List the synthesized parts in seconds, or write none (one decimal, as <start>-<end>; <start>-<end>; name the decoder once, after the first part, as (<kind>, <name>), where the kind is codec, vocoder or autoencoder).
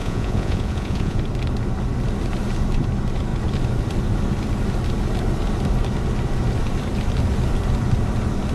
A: 0.0-1.2 (vocoder, Vocos)